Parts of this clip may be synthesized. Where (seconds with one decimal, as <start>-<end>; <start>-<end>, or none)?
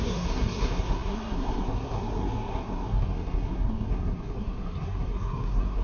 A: 0.0-5.8